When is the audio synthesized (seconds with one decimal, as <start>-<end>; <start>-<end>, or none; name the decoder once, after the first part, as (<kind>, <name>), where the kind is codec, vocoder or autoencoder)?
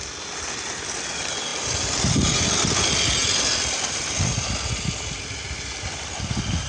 1.5-2.0 (vocoder, BigVGAN v2); 3.2-5.9